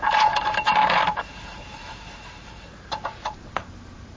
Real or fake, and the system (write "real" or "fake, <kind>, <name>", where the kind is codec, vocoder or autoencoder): fake, vocoder, BigVGAN v2